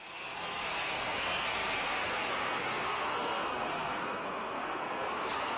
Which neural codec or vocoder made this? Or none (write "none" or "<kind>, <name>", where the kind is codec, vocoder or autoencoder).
codec, SNAC